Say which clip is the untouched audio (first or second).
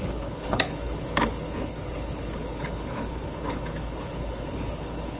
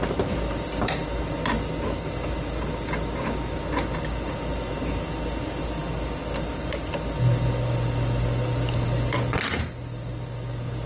second